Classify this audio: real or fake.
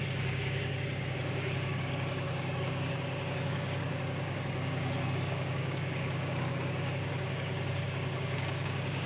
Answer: fake